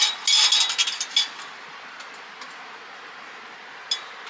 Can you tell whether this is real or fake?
real